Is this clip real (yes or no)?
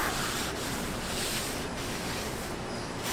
no